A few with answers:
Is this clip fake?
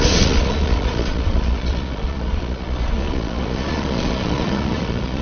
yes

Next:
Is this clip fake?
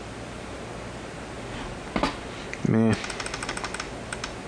no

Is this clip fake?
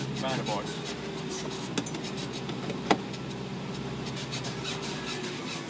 no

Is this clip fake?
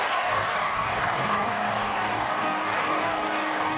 yes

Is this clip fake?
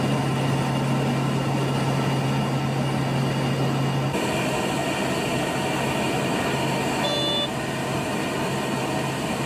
no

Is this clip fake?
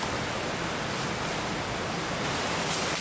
no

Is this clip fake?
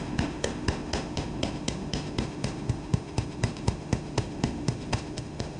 yes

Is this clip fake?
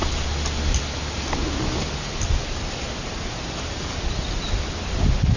no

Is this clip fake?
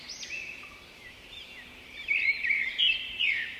yes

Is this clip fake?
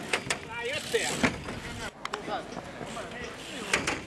no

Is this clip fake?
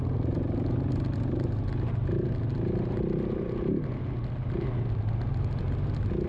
no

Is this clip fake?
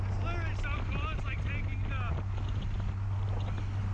no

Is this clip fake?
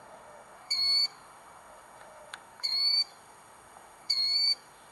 yes